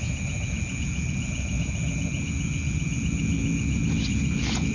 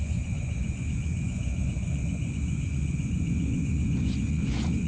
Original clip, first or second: first